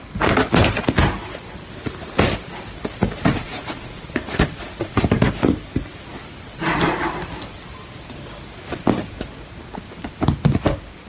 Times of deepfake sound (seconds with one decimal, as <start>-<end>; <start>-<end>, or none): 3.4-5.1